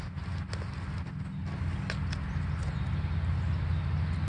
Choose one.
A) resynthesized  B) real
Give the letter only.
B